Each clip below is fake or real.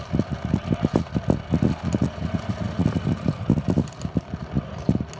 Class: real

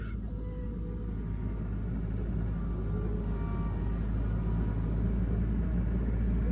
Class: real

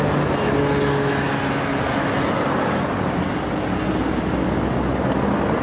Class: real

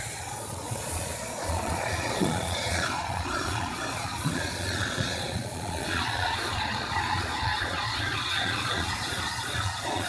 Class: fake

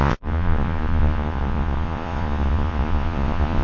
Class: fake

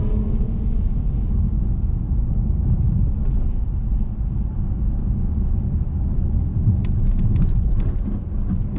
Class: real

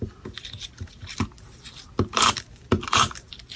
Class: real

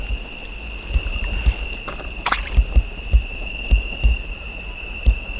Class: real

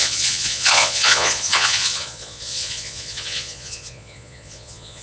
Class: fake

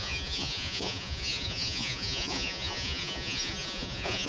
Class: fake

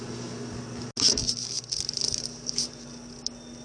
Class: real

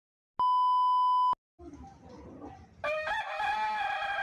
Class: real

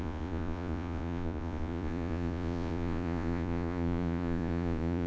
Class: fake